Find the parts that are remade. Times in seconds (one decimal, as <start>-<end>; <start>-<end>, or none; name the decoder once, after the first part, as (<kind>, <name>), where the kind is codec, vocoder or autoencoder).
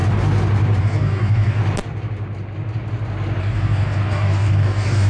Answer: 0.8-1.6 (codec, DAC); 3.4-5.1